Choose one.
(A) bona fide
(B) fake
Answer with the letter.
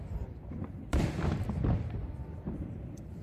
B